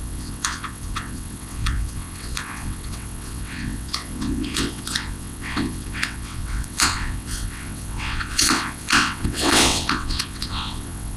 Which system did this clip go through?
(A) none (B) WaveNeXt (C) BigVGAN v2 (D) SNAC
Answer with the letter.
B